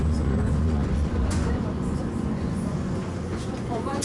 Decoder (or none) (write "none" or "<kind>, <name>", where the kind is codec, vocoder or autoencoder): vocoder, Vocos